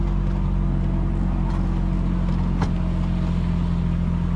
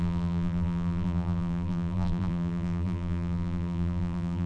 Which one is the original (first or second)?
first